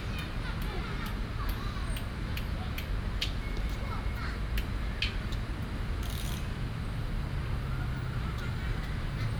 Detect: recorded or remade recorded